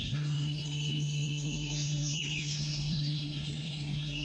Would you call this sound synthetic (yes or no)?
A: yes